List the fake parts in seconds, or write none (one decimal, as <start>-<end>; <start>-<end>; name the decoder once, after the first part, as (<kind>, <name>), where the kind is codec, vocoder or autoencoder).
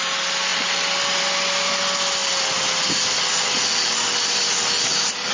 none